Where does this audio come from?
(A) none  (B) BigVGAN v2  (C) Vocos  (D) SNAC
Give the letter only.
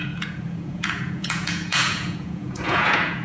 C